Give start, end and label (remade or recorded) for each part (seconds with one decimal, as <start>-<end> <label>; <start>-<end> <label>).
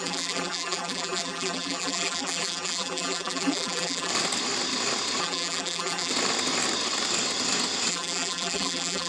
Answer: 0.0-4.1 remade; 4.1-5.2 recorded; 5.2-6.1 remade; 6.1-7.9 recorded; 7.9-9.1 remade